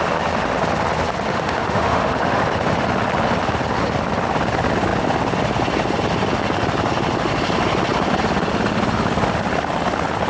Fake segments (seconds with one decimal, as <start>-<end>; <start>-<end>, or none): 1.3-2.4